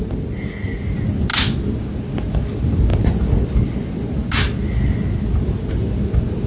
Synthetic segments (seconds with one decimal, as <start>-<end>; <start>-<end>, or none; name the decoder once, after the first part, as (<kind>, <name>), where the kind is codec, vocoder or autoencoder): none